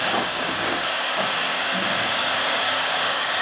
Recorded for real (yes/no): no